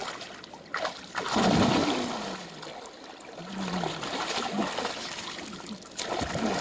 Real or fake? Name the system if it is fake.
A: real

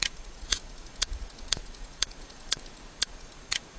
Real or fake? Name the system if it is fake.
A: fake, vocoder, Vocos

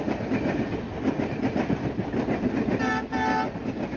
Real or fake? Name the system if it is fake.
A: real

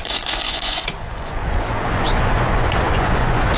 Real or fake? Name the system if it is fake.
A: fake, vocoder, Vocos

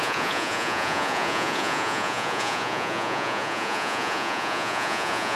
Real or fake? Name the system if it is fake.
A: fake, vocoder, Vocos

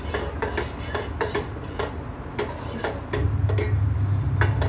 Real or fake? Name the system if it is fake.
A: real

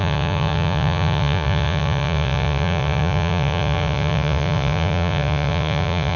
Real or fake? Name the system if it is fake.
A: fake, vocoder, Vocos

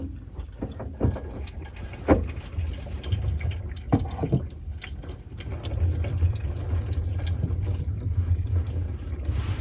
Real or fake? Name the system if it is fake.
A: real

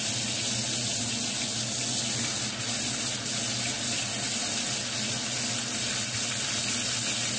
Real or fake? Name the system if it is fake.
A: real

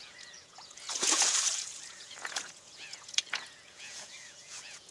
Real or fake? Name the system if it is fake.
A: fake, vocoder, Vocos